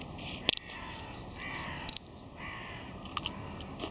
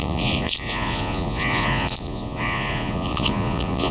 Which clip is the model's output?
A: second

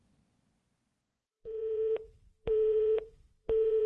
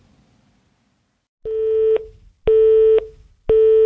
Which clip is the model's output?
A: first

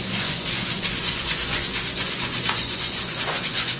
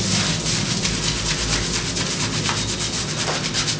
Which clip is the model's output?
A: first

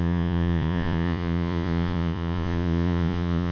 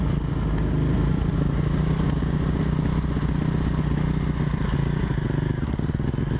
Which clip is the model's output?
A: first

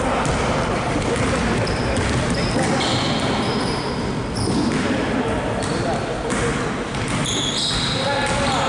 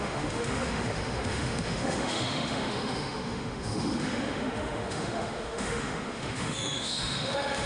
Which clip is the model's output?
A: second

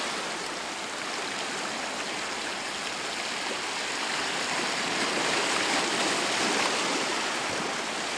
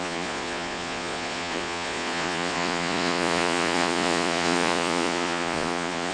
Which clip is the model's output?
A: second